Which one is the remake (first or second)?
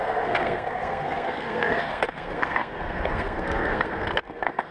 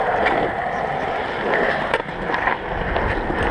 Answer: first